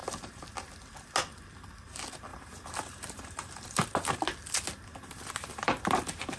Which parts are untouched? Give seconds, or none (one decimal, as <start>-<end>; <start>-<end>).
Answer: 0.7-2.3; 4.2-4.9; 5.8-6.4